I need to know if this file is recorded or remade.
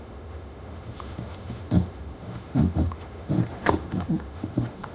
remade